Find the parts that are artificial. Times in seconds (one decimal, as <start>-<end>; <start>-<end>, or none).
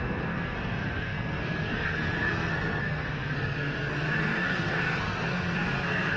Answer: 0.0-6.2